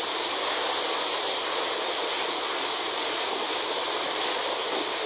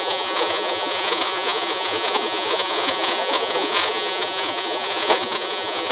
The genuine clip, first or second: first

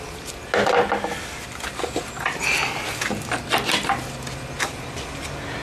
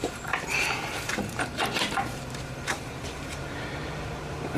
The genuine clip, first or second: first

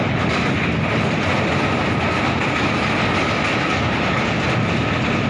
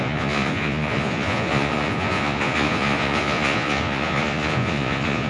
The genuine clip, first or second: first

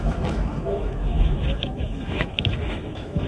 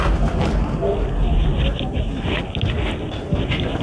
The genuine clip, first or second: second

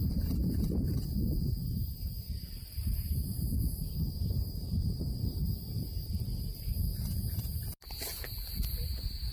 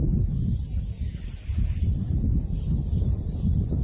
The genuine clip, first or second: second